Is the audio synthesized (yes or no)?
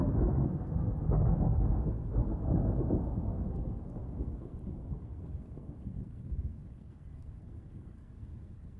yes